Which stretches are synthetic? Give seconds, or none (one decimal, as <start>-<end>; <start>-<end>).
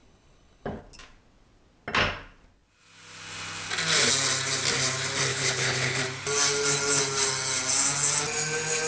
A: 0.0-0.8; 5.3-6.0